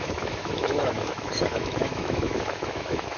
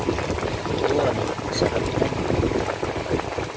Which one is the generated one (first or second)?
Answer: first